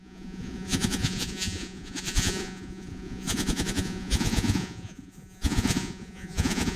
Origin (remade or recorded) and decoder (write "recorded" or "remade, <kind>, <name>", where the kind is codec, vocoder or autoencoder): remade, vocoder, Vocos